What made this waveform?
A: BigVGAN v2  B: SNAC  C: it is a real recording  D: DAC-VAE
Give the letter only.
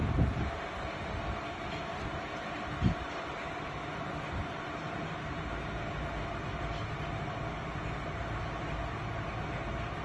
C